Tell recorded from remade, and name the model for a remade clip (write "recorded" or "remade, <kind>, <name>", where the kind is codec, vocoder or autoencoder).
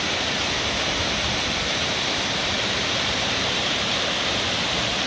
recorded